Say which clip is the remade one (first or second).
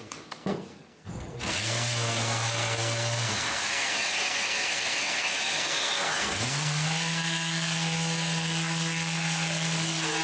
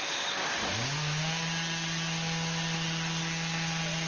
first